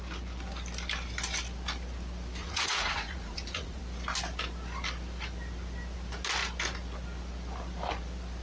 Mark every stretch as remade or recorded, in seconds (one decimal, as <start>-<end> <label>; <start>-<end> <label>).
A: 0.0-2.4 recorded; 2.4-3.8 remade; 3.8-8.4 recorded